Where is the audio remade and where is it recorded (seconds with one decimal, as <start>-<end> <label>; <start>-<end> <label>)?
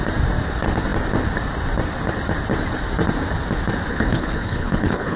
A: 0.0-3.9 recorded; 3.9-5.2 remade